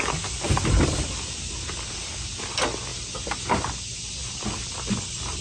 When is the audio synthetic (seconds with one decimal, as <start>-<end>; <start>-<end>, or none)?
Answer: none

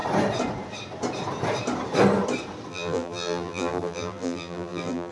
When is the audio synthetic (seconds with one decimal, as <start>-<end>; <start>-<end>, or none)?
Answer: 2.7-5.1

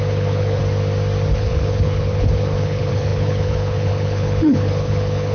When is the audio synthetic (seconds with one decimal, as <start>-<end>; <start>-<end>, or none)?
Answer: 0.0-0.6; 1.3-5.3

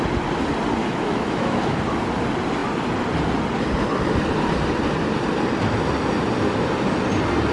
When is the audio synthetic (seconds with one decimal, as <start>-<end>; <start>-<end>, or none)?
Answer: 0.8-1.8

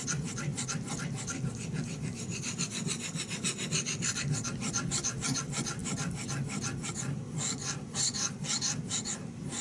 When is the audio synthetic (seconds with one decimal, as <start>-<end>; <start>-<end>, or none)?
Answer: none